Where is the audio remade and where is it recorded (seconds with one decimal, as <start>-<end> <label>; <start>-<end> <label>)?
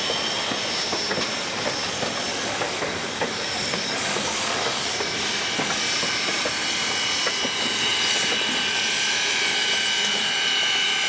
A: 0.0-2.3 recorded; 2.3-4.9 remade; 4.9-11.1 recorded